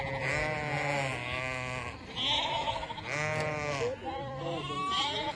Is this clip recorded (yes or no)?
yes